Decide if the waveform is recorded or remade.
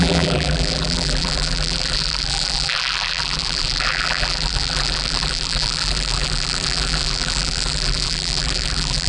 remade